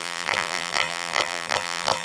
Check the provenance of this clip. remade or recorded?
remade